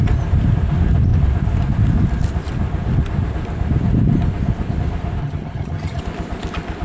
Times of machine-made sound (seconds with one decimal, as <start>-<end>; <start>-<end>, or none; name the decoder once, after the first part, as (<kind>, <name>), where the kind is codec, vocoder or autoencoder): 5.2-6.0 (vocoder, HiFi-GAN)